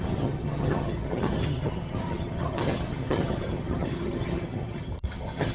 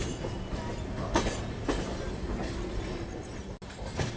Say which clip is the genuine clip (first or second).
second